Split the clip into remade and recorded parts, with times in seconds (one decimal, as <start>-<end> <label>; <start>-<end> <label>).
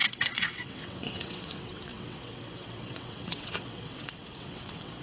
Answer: 0.0-5.0 remade